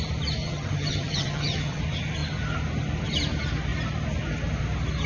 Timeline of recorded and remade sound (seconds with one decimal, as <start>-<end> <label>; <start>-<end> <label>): 0.0-0.4 recorded; 0.4-1.8 remade; 1.8-5.1 recorded